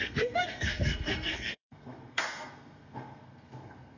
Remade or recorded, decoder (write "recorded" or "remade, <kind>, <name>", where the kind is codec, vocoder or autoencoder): remade, codec, SNAC